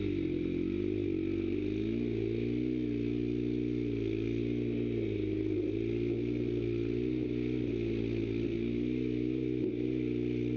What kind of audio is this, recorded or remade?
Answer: recorded